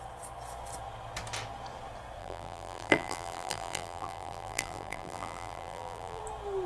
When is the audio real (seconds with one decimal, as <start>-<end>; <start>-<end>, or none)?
0.0-2.2; 6.2-6.7